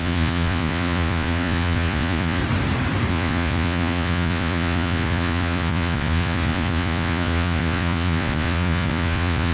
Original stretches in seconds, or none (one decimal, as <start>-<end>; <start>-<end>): 2.4-3.1

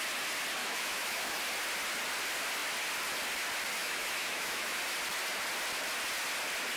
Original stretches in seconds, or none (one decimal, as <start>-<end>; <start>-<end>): 0.0-0.6; 1.4-3.8; 4.8-6.8

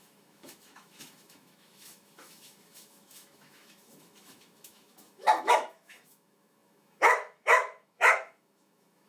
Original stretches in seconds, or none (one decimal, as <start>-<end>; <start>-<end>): none

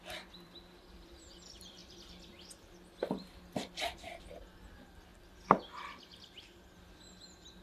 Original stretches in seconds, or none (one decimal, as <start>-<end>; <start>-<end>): 5.1-6.7